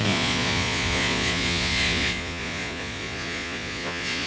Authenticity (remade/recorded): remade